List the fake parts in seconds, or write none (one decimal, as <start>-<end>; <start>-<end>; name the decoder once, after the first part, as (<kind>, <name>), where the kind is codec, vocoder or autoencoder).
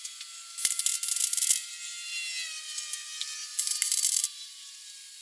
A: none